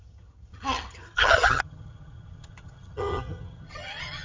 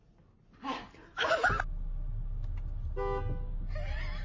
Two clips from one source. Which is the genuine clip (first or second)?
second